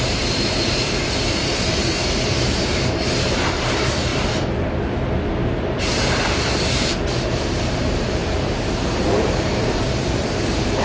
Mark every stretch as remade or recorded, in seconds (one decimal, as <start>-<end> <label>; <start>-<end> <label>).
0.0-4.1 remade; 4.1-5.3 recorded; 5.3-10.8 remade